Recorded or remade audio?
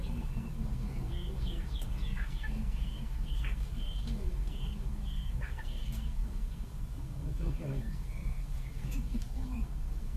remade